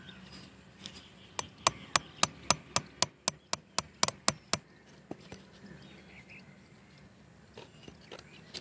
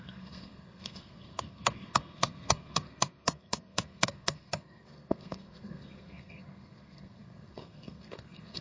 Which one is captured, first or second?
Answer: first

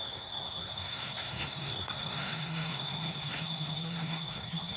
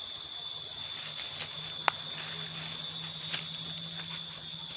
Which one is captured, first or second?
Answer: second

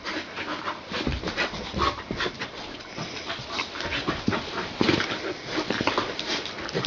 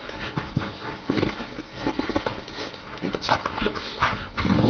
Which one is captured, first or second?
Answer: first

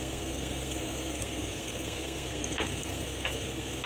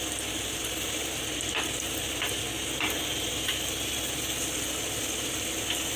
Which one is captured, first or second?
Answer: second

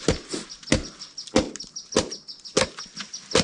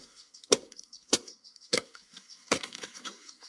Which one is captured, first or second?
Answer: first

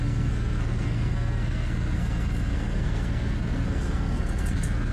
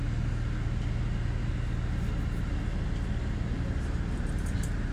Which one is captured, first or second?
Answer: second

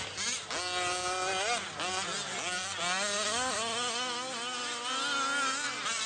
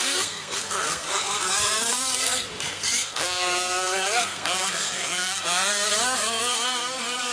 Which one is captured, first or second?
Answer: first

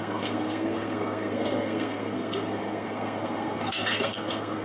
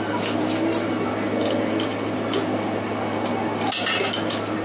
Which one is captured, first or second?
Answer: second